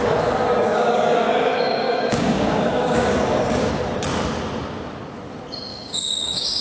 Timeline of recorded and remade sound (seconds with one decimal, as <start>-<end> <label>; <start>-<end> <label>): 0.0-0.7 recorded; 0.7-3.7 remade; 3.7-5.7 recorded; 5.7-6.6 remade